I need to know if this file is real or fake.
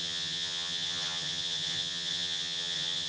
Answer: fake